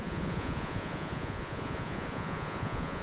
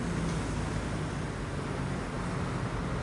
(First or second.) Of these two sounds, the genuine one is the second